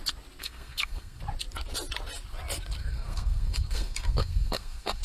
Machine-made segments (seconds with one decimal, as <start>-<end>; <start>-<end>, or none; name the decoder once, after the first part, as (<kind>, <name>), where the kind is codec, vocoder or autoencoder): 0.4-1.2 (codec, SNAC); 2.8-5.0